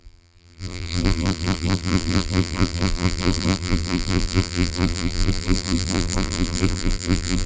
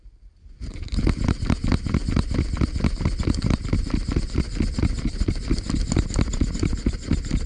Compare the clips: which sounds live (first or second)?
second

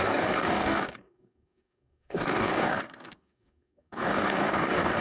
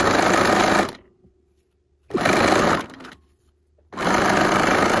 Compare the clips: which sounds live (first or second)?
second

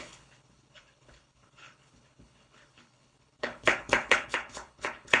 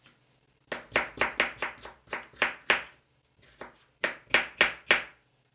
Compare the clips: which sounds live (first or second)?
second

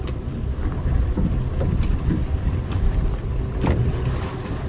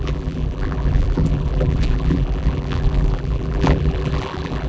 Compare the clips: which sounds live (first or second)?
first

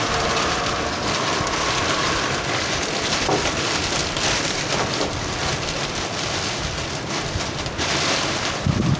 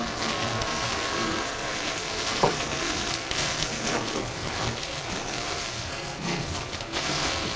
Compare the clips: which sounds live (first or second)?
first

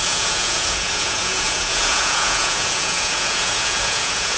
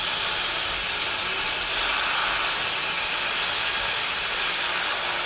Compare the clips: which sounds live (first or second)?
second